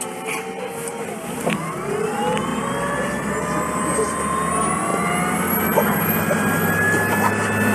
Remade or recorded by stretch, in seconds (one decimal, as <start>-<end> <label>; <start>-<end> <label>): 0.0-7.7 recorded